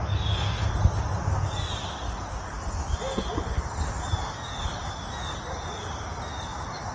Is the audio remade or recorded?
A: recorded